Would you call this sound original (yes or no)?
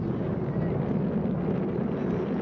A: yes